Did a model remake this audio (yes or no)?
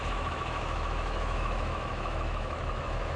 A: yes